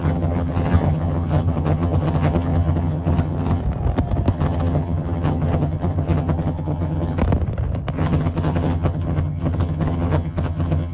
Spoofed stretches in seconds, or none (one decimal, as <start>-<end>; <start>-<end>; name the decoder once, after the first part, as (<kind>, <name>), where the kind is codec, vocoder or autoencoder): 0.0-3.6 (vocoder, HiFi-GAN); 4.3-7.2; 7.9-10.9